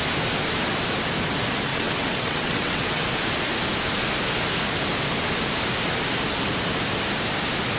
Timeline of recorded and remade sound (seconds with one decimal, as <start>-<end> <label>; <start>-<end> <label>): 0.0-1.7 recorded; 1.7-3.0 remade; 3.0-7.8 recorded